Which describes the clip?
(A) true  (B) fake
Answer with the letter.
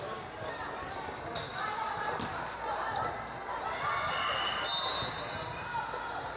A